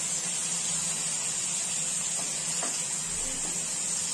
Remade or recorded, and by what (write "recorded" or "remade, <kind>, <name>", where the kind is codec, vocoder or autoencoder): recorded